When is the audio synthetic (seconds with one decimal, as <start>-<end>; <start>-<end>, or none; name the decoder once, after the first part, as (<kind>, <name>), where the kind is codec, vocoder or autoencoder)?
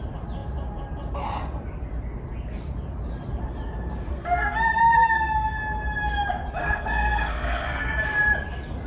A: 4.1-5.6 (codec, SNAC); 6.6-7.9